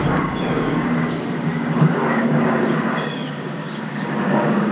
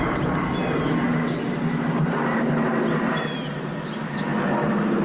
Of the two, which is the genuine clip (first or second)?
second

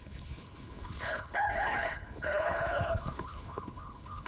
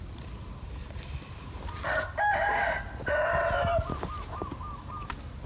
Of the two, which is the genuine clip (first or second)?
second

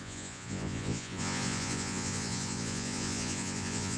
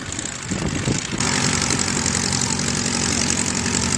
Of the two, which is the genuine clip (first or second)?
second